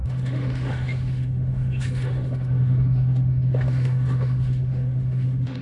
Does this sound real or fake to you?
fake